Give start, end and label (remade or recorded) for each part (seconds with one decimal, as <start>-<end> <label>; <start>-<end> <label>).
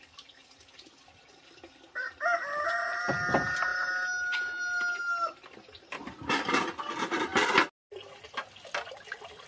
0.0-9.5 recorded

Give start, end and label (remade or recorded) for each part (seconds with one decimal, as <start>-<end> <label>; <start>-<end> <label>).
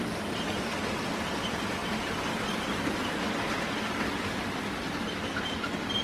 0.0-6.0 recorded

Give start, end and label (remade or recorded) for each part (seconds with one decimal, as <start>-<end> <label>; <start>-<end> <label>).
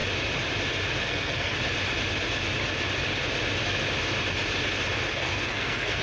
0.0-1.0 recorded; 1.0-1.5 remade; 1.5-5.1 recorded; 5.1-6.0 remade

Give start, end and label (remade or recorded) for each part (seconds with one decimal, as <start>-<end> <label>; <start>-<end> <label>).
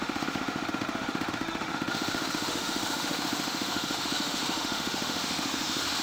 0.0-6.0 remade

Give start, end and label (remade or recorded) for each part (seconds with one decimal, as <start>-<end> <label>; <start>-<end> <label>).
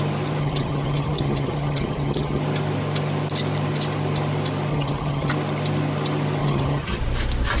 0.0-0.4 recorded; 0.4-2.4 remade; 2.4-4.7 recorded; 4.7-5.3 remade; 5.3-6.4 recorded; 6.4-7.0 remade; 7.0-7.6 recorded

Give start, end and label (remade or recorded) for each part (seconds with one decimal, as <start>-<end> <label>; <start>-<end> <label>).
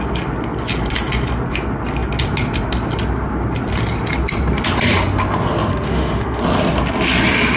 0.0-5.7 recorded; 5.7-6.4 remade; 6.4-7.6 recorded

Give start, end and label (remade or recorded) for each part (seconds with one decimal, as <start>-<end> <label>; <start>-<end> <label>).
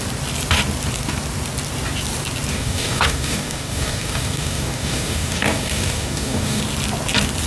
0.0-2.5 recorded; 2.5-6.6 remade; 6.6-7.5 recorded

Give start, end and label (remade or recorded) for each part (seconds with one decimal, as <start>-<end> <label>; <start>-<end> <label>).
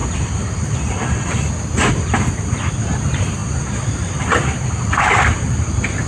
0.0-2.2 remade; 2.2-6.1 recorded